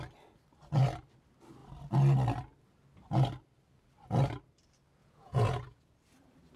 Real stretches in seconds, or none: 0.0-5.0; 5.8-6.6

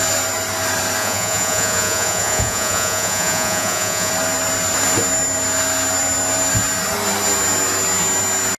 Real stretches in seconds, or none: 0.0-1.0; 4.1-8.6

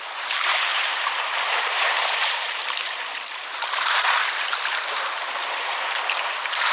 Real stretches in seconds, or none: 0.0-0.7; 2.6-3.3; 4.0-6.7

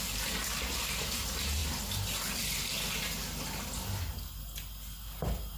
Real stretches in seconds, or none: 0.0-5.6

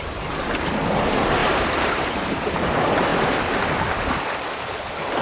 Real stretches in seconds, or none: 0.0-1.4; 2.6-5.2

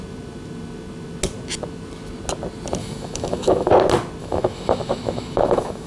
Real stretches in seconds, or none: 0.0-2.8; 3.7-4.2

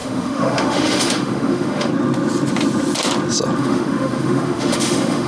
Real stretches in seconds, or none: 1.9-3.6